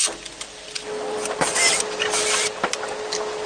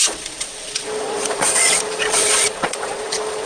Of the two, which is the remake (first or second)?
second